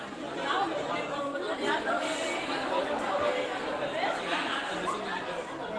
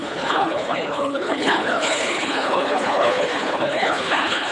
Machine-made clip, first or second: second